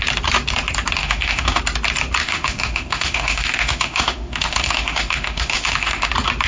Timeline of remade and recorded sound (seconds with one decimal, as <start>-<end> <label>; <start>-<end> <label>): 0.0-1.0 recorded; 1.0-1.6 remade; 1.6-2.2 recorded; 2.2-6.1 remade; 6.1-6.5 recorded